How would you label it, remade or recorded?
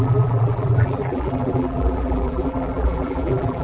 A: remade